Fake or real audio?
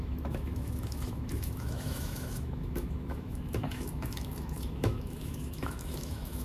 fake